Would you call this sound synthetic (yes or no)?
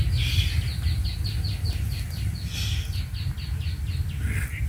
no